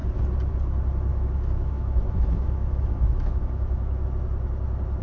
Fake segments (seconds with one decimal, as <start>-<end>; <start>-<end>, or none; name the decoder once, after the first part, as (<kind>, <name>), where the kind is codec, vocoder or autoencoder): 1.1-4.1 (autoencoder, DAC-VAE)